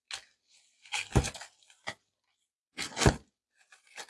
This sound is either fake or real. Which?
real